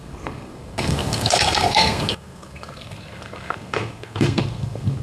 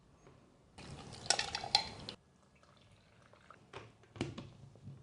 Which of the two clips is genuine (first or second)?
second